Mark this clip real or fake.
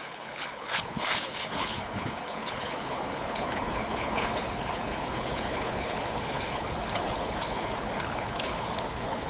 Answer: fake